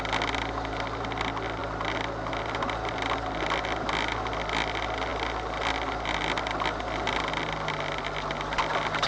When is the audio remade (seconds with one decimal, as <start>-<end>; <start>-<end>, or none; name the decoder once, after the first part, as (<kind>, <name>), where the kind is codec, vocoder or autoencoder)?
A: none